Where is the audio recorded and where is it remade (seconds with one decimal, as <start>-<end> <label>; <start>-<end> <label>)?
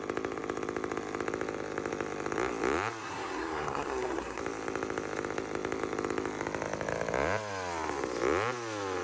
0.0-3.0 recorded; 3.0-4.4 remade; 4.4-9.0 recorded